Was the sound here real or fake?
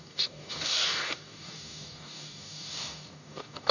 fake